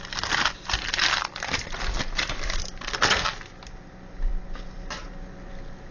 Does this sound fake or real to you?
real